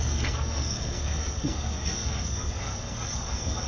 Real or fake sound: fake